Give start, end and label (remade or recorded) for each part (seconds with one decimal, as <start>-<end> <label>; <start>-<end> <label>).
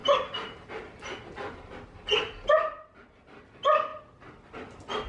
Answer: 0.0-5.1 recorded